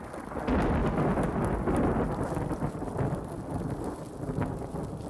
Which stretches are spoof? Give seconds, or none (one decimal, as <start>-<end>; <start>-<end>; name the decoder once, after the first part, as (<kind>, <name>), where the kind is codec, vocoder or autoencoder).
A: none